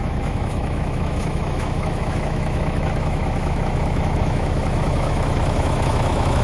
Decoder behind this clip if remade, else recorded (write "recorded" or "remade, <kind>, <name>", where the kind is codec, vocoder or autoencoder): remade, autoencoder, DAC-VAE